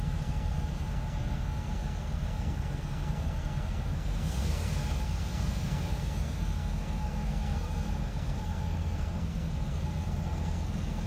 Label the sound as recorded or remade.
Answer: remade